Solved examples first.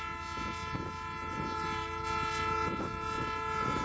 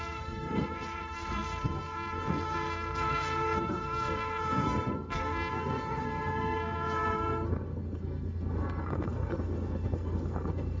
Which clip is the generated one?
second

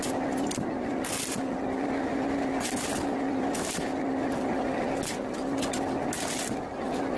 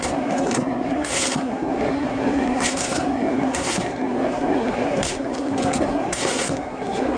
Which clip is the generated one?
second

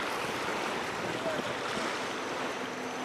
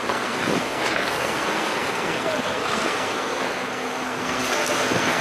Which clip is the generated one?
second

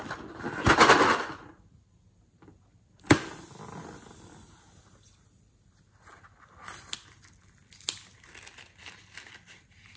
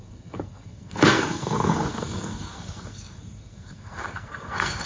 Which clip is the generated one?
second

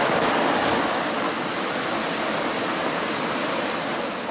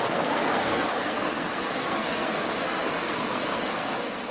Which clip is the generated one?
second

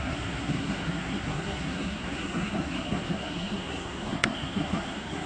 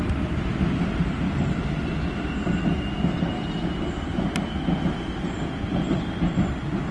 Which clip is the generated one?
first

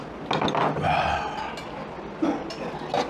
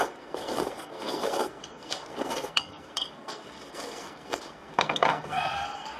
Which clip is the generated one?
second